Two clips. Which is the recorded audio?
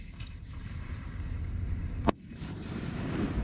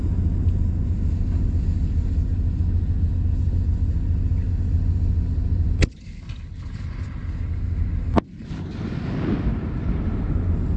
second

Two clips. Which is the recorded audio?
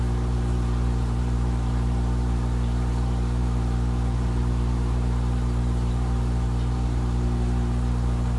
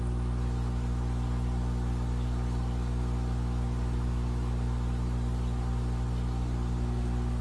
second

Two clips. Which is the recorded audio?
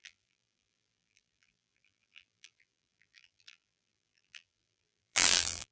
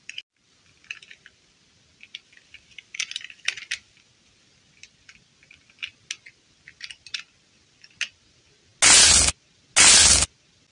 second